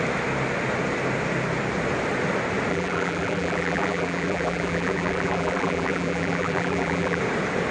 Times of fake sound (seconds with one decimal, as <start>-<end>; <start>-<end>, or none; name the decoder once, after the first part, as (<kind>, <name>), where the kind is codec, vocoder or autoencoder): 2.7-7.2 (vocoder, BigVGAN v2)

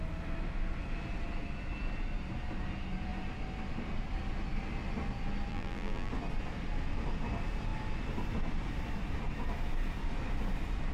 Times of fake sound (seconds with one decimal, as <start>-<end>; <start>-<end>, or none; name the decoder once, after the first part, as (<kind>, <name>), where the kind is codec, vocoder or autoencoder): 5.5-6.1 (vocoder, BigVGAN v2)

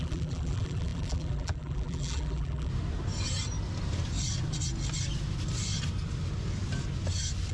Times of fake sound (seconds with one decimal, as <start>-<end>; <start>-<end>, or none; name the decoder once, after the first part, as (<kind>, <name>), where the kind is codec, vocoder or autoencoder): 0.0-2.7 (vocoder, BigVGAN v2)

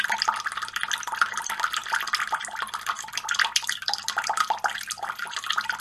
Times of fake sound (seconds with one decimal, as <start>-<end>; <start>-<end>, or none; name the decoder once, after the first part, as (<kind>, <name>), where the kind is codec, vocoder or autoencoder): none

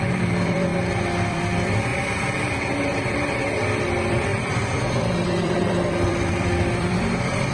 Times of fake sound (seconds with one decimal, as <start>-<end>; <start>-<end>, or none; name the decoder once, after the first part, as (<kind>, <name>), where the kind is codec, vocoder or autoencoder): 0.0-0.7 (vocoder, BigVGAN v2); 1.3-1.9; 3.0-7.5

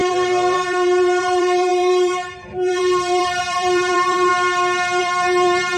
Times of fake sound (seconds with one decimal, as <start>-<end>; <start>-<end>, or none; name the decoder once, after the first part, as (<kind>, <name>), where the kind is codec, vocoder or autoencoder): 0.0-4.3 (vocoder, BigVGAN v2); 5.0-5.8